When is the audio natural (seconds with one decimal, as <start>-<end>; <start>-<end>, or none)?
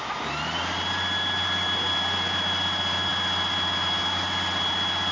0.0-5.1